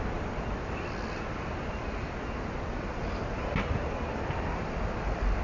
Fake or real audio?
real